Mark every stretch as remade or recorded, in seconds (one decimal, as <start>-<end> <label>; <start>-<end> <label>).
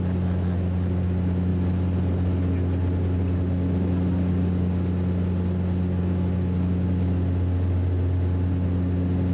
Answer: 0.0-9.3 recorded